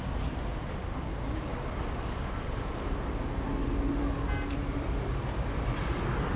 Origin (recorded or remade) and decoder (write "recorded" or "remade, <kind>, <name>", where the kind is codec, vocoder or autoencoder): recorded